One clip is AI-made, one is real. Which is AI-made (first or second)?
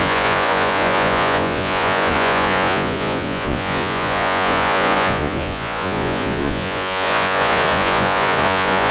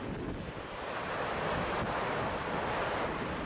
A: first